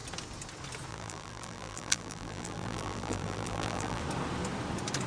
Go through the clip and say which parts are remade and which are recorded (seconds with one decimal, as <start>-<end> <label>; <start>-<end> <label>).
0.0-0.9 recorded; 0.9-4.0 remade; 4.0-5.1 recorded